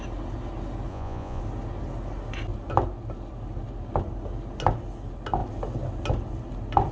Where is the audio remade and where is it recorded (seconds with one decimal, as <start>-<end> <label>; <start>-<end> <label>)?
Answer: 0.0-0.9 recorded; 0.9-1.4 remade; 1.4-6.9 recorded